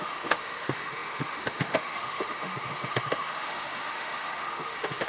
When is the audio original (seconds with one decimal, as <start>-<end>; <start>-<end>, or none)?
none